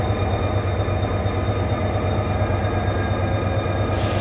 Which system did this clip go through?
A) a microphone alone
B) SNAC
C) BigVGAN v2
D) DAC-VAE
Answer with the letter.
A